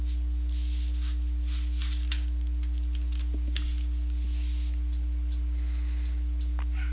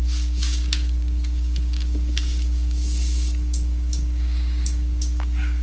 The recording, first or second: first